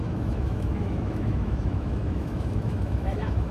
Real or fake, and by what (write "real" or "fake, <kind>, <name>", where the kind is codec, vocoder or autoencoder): fake, autoencoder, DAC-VAE